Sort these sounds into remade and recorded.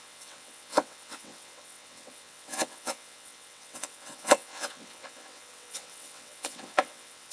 remade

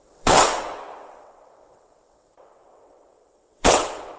remade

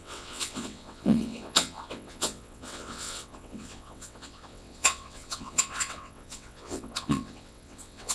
remade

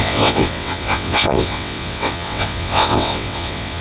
remade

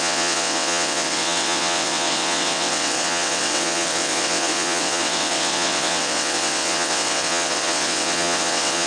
remade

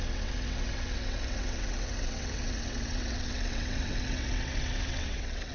remade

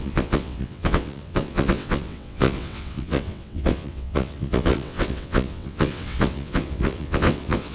remade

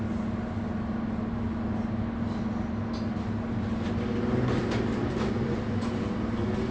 recorded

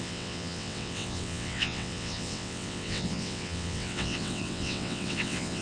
remade